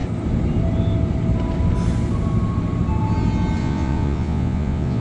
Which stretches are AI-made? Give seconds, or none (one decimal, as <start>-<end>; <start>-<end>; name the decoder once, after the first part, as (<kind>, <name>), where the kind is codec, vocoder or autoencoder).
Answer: 3.6-5.0 (vocoder, Vocos)